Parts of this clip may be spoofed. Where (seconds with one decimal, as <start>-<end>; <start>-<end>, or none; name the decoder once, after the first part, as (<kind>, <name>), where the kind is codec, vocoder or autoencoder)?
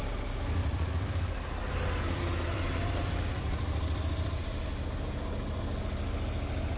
0.6-4.7 (vocoder, BigVGAN v2)